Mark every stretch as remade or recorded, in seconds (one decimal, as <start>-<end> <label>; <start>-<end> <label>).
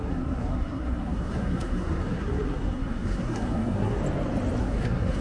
0.0-4.0 remade; 4.0-4.6 recorded; 4.6-5.2 remade